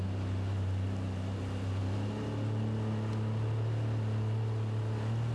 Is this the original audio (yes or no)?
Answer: yes